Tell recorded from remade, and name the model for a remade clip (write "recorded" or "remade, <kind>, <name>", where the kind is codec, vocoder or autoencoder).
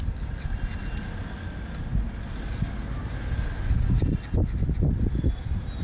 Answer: recorded